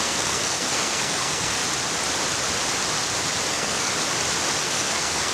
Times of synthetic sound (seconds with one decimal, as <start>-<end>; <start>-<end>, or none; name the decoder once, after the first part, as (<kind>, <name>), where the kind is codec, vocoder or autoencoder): 0.0-1.6 (codec, SNAC); 3.5-3.9; 4.6-5.3

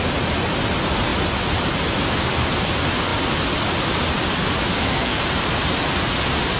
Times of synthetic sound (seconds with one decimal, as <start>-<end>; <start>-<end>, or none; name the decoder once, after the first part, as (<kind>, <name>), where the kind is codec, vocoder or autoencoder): 4.7-5.2 (codec, SNAC)